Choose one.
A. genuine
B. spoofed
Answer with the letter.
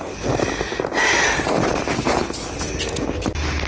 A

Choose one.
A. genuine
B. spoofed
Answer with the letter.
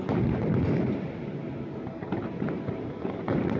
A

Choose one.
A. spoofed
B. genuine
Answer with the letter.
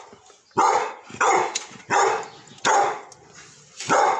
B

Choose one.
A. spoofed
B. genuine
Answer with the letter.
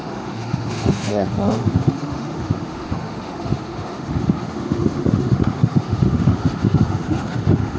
A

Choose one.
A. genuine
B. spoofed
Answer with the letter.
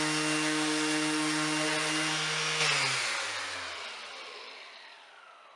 A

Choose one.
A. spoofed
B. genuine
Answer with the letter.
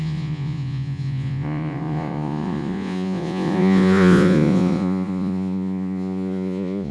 A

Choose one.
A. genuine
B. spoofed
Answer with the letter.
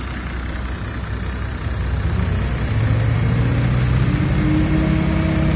A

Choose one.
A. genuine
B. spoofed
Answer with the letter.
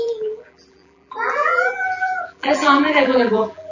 B